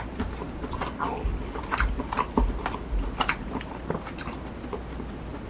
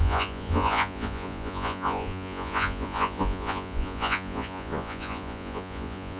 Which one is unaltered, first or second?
first